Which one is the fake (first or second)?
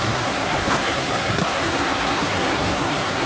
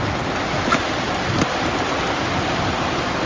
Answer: first